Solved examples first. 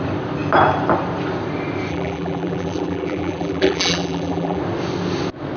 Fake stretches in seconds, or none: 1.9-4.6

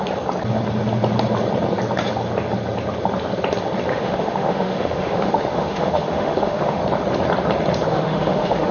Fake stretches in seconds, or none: 3.9-6.8; 7.9-8.7

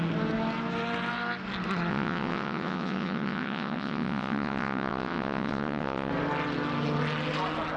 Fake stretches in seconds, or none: 1.9-6.1

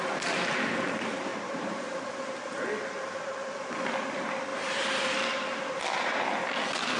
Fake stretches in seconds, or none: 1.3-2.1; 2.5-3.1; 4.5-5.8

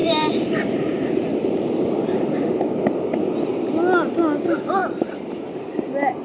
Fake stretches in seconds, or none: 0.0-2.0; 4.8-5.8